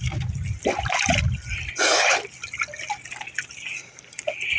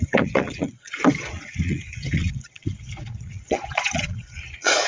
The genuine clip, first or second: first